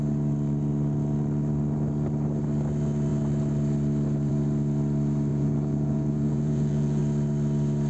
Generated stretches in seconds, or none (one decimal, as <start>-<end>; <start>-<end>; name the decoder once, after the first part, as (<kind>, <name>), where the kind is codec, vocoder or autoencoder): 5.3-7.0 (vocoder, Vocos)

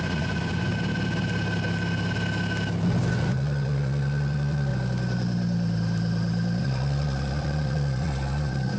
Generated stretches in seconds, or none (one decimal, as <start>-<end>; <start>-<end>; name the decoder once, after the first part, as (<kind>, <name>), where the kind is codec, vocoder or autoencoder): 0.0-0.7 (vocoder, Vocos); 3.1-4.7; 6.6-8.8

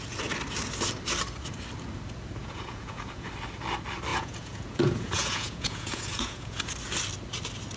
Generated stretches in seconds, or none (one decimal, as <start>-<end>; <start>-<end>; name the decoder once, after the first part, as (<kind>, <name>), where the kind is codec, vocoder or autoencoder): 2.4-3.3 (vocoder, Vocos); 4.1-6.7

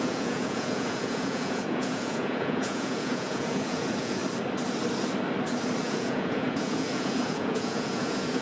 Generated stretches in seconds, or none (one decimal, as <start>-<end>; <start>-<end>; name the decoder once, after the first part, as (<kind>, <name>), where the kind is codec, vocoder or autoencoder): 0.0-4.2 (vocoder, Vocos); 5.8-8.4

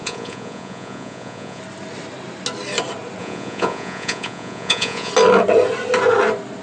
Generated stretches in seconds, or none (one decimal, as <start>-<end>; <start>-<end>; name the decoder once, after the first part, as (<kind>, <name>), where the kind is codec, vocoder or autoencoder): 0.0-1.6 (vocoder, Vocos); 3.2-5.1

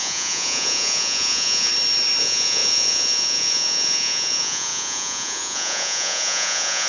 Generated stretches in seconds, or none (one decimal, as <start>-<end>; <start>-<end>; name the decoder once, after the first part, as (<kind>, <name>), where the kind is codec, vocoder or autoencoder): 0.0-1.7 (vocoder, Vocos); 2.2-6.9

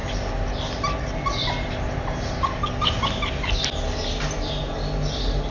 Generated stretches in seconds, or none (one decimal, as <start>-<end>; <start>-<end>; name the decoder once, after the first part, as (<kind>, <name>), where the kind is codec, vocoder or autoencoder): none

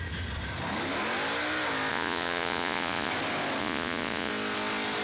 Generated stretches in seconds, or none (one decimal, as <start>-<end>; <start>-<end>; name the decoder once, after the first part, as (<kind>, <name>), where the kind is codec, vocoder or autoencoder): 1.9-3.1 (vocoder, Vocos); 3.6-4.3